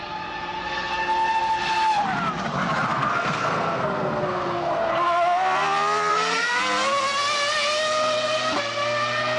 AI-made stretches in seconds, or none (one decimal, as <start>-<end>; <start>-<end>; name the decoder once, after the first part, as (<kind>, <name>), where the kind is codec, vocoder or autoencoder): 2.9-4.9 (codec, SNAC); 6.1-6.6